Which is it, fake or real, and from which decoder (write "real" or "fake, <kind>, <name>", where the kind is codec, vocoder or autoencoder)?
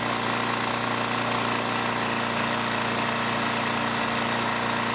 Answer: real